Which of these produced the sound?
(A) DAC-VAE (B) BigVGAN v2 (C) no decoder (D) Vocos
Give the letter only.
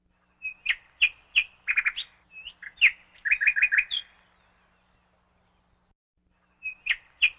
C